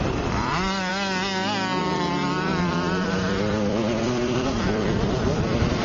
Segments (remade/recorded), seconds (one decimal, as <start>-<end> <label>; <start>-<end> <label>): 0.0-0.9 remade; 0.9-1.8 recorded; 1.8-5.8 remade